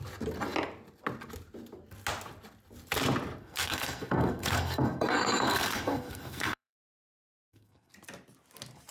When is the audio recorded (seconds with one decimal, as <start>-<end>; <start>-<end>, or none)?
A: 0.0-3.4; 7.9-8.9